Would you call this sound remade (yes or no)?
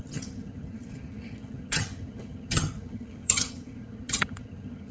yes